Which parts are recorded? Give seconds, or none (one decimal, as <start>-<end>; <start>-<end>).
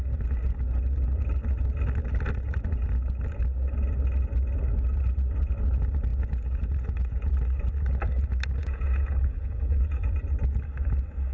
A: 0.0-6.1; 7.3-8.6; 10.2-11.3